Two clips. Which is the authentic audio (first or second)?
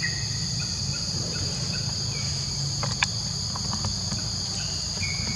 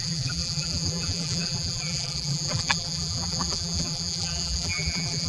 first